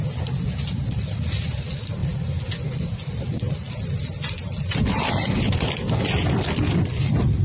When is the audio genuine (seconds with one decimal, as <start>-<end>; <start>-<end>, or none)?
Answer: 0.0-7.4